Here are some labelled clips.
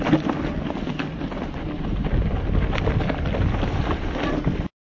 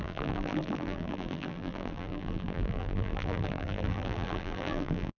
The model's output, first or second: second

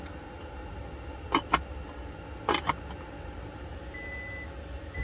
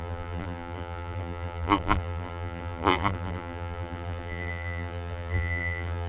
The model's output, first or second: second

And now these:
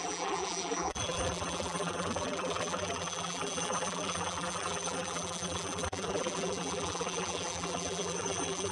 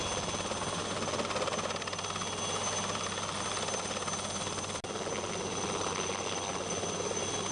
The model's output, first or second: first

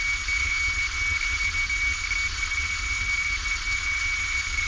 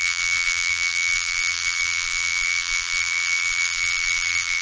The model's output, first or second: second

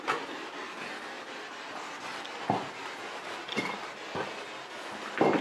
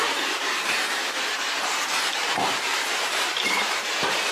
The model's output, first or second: second